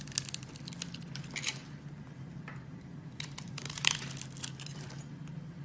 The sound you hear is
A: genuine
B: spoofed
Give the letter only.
A